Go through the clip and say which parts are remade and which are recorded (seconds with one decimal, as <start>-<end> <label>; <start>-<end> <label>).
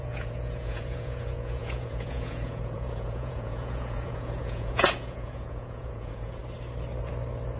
0.0-6.4 remade; 6.4-7.6 recorded